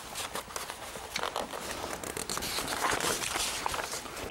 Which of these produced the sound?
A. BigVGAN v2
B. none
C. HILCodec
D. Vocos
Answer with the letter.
B